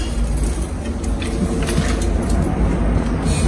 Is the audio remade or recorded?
recorded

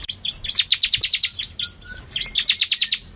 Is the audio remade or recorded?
recorded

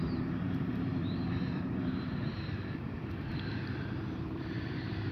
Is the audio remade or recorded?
remade